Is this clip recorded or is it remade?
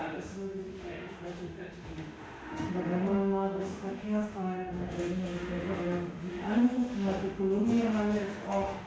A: remade